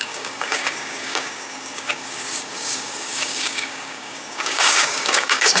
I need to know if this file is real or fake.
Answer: fake